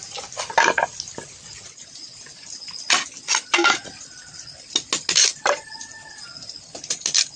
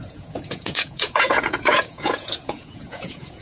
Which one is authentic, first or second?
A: first